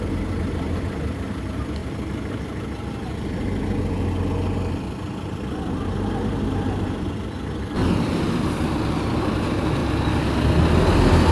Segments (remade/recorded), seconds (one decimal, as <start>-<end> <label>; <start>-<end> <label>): 0.0-1.8 remade; 1.8-6.4 recorded; 6.4-9.8 remade; 9.8-10.9 recorded; 10.9-11.3 remade